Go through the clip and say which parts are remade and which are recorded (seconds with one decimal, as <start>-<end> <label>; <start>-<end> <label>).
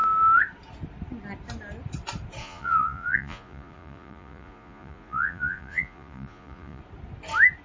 0.0-2.4 recorded; 2.4-6.8 remade; 6.8-7.6 recorded